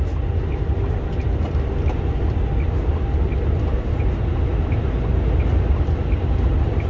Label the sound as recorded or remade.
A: recorded